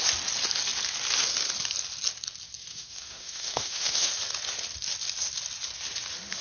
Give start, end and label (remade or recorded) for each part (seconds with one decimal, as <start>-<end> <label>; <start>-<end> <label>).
0.0-2.7 recorded; 2.7-4.1 remade; 4.1-6.4 recorded